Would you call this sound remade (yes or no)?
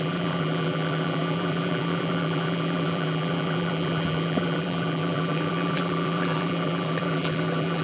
yes